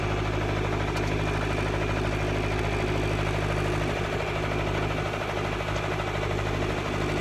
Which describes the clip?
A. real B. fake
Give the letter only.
A